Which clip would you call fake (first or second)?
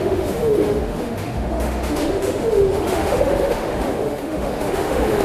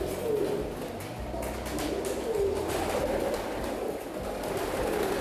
first